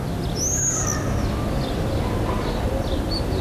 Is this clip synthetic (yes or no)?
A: no